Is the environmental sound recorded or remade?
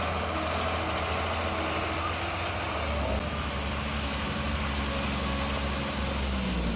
recorded